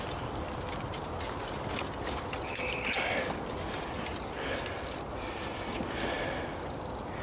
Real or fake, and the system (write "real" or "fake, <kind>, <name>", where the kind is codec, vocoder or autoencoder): real